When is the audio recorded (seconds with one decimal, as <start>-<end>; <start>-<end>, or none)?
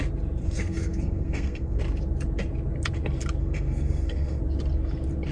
0.0-0.4; 1.8-3.4; 4.4-5.3